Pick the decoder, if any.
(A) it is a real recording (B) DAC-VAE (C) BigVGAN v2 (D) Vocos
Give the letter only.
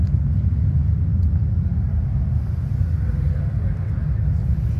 A